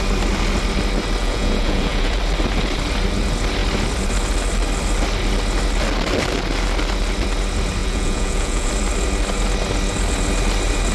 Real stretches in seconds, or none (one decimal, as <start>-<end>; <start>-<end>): 0.0-1.2; 2.2-7.8; 8.7-10.9